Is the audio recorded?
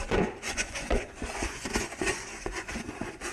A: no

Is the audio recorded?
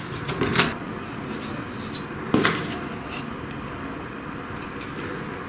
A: yes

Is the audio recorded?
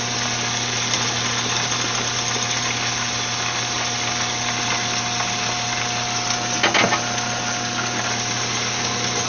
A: yes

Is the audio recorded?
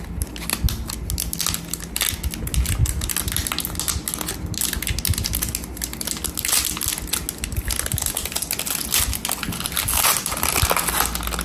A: yes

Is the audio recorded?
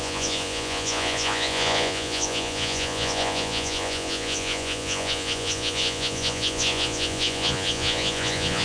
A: no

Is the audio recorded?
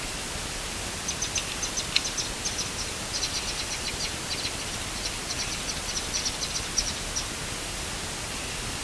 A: yes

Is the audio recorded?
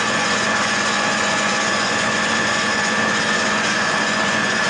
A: no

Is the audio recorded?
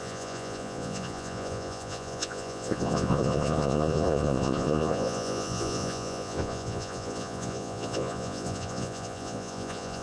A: no